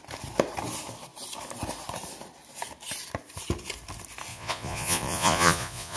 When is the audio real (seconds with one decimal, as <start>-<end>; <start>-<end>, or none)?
0.0-4.3